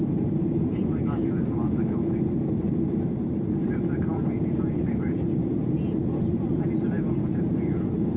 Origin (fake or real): fake